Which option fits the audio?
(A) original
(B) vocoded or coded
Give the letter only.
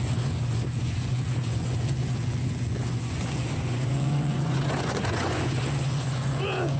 B